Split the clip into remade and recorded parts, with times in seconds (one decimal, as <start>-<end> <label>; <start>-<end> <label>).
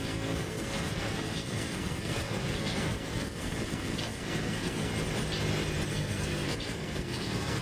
0.0-4.9 remade; 4.9-5.9 recorded; 5.9-7.6 remade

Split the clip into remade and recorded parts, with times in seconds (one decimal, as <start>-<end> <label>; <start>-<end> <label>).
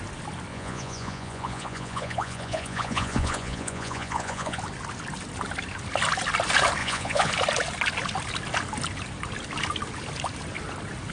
0.0-0.5 recorded; 0.5-4.6 remade; 4.6-6.8 recorded; 6.8-7.3 remade; 7.3-11.1 recorded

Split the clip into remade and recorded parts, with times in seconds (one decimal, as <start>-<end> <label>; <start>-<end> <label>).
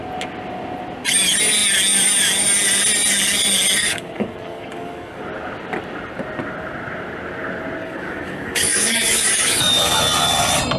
0.0-3.8 recorded; 3.8-5.2 remade; 5.2-7.8 recorded; 7.8-10.0 remade; 10.0-10.8 recorded